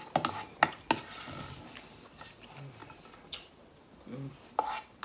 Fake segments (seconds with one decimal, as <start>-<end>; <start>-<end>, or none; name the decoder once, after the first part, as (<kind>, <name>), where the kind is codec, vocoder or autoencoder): none